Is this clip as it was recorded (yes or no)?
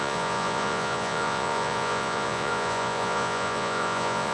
no